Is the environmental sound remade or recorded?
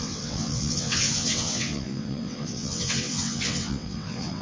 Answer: remade